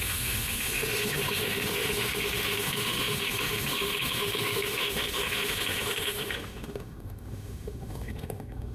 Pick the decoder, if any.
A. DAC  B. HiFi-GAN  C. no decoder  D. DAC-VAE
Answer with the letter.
D